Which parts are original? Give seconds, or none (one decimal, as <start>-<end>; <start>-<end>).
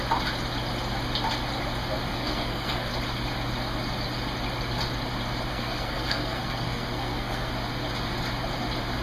0.0-2.1; 2.9-5.5; 7.5-9.0